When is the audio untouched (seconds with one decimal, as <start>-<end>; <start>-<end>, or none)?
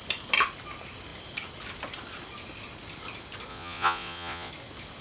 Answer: 0.0-3.5; 4.5-5.0